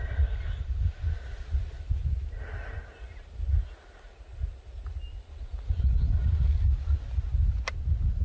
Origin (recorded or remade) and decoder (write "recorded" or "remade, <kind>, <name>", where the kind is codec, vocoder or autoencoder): recorded